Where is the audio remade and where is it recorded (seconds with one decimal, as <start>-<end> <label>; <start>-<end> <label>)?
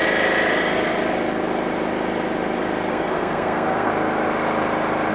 0.0-2.9 recorded; 2.9-3.9 remade; 3.9-5.1 recorded